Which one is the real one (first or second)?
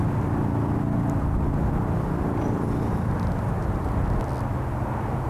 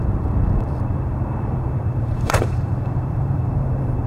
first